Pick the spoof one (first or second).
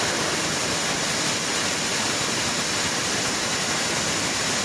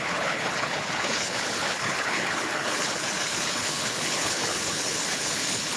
second